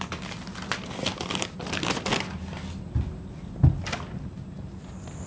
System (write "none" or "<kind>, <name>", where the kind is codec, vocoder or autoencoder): none